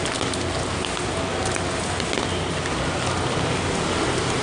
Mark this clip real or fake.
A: real